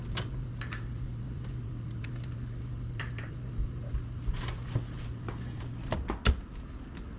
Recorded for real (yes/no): yes